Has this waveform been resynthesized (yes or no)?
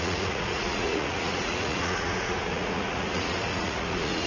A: yes